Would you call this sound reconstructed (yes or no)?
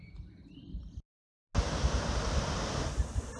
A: no